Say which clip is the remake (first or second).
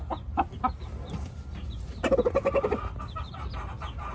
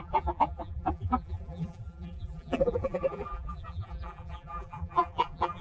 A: second